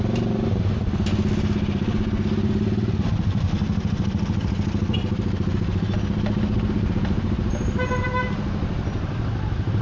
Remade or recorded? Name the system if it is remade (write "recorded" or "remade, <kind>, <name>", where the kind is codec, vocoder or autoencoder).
recorded